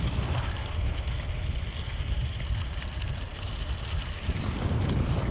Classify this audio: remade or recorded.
recorded